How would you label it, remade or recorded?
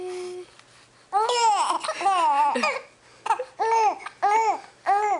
recorded